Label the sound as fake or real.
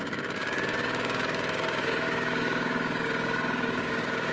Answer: fake